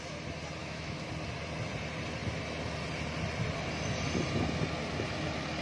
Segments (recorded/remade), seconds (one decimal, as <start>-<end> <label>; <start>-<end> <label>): 0.0-0.6 recorded; 0.6-1.1 remade; 1.1-5.6 recorded